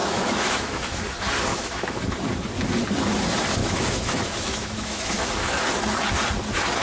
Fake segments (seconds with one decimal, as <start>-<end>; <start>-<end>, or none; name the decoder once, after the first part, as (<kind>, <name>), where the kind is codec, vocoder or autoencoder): 0.0-1.0 (autoencoder, DAC-VAE); 1.5-2.0; 3.6-5.5